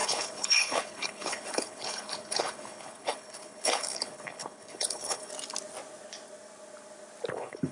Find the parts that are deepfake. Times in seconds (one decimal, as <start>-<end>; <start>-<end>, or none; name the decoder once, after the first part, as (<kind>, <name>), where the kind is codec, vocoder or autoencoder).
0.0-5.3 (codec, HILCodec); 7.3-7.7